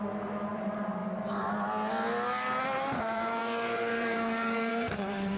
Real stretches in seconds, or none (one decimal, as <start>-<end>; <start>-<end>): 1.0-2.6